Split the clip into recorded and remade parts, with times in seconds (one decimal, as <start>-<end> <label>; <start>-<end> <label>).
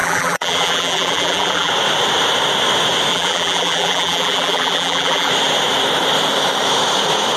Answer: 0.0-1.7 remade; 1.7-3.1 recorded; 3.1-5.3 remade; 5.3-7.4 recorded